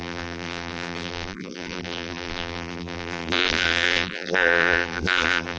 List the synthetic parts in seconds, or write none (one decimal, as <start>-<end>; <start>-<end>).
0.0-5.6